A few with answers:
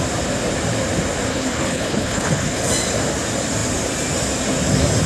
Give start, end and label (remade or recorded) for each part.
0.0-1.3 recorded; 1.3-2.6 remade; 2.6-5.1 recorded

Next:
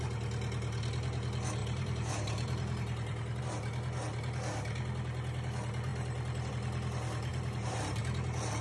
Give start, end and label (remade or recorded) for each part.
0.0-1.6 recorded; 1.6-3.4 remade; 3.4-7.3 recorded; 7.3-8.0 remade; 8.0-8.6 recorded

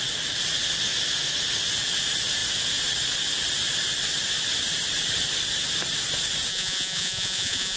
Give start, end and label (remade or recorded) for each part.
0.0-6.5 recorded; 6.5-7.8 remade